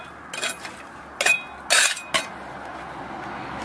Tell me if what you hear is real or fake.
real